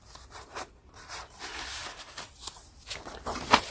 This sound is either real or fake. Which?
real